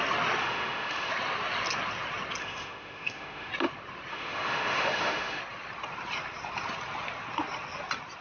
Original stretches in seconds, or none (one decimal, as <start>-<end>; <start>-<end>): 0.0-0.4; 1.1-2.4; 3.5-4.1; 5.4-8.2

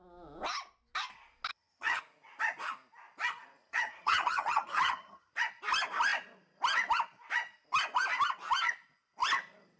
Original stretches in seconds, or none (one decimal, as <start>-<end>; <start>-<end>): 0.0-1.5; 2.0-3.7; 5.3-9.8

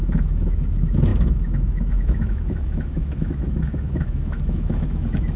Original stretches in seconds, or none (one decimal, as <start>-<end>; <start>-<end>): none

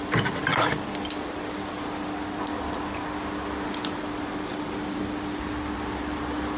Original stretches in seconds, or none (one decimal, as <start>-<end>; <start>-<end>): 0.0-6.6

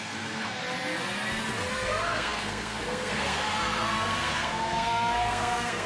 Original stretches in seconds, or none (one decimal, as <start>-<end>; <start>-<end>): 0.6-1.7

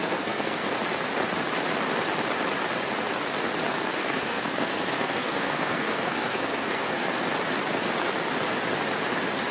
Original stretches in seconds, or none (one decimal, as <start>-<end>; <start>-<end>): 0.7-4.0; 7.2-9.5

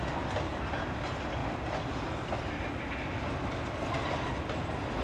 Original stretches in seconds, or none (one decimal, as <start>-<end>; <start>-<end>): 0.0-5.0